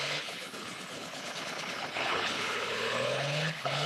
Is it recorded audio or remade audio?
remade